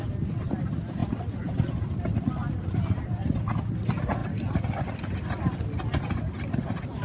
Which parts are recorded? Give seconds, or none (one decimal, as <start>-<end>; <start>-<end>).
0.0-7.0